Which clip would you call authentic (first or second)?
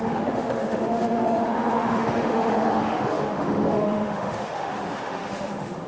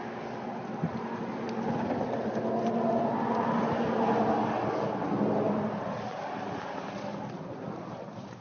second